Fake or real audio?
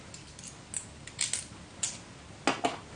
real